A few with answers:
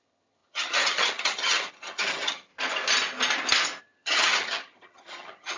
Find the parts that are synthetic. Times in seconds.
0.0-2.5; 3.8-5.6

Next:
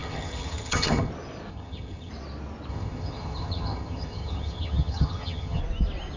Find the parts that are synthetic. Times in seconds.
0.0-1.1; 1.5-2.1; 2.7-5.6

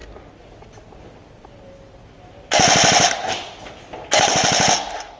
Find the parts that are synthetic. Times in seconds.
none